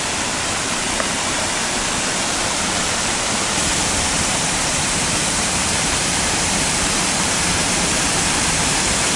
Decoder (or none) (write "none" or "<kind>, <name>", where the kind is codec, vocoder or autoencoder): vocoder, BigVGAN v2